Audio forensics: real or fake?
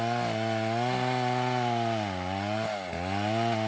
real